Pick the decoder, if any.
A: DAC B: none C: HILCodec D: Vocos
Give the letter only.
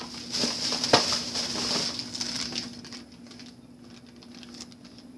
B